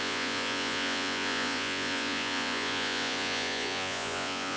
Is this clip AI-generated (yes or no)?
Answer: yes